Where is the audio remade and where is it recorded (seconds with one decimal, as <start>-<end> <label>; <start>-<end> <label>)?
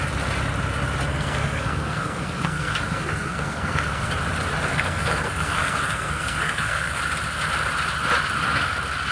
0.0-1.1 recorded; 1.1-4.1 remade; 4.1-4.7 recorded; 4.7-7.0 remade; 7.0-9.1 recorded